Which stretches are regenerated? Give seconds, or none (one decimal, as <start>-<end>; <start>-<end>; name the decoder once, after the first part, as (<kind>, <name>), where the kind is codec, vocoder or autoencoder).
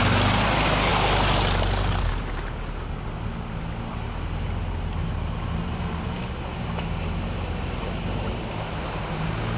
none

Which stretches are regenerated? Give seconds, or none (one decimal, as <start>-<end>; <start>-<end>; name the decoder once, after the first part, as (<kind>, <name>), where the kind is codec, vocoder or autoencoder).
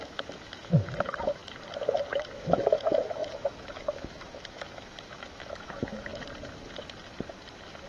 0.0-1.4 (autoencoder, DAC-VAE); 2.1-6.1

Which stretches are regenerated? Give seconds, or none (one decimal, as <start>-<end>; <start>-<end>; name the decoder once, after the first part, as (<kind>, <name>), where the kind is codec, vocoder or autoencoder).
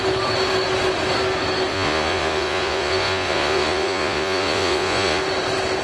1.7-5.2 (vocoder, Vocos)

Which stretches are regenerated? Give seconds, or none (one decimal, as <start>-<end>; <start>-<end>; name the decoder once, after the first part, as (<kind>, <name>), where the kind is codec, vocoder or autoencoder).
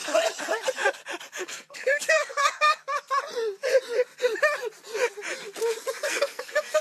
1.4-2.9 (codec, SNAC); 5.9-6.8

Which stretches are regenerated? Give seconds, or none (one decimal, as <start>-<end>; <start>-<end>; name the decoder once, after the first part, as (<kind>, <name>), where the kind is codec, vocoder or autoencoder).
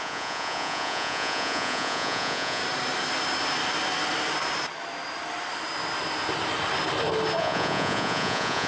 0.0-2.6 (vocoder, Vocos); 7.4-8.7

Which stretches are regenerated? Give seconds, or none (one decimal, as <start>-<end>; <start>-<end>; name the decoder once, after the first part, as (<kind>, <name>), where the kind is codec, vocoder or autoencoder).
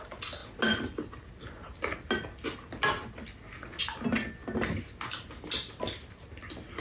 none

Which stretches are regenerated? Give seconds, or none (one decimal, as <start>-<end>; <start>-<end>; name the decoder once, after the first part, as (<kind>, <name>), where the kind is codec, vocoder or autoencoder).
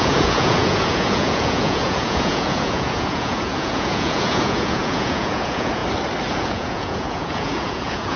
0.0-5.8 (vocoder, Vocos); 6.3-8.2